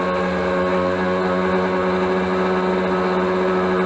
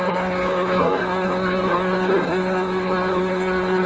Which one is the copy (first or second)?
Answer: second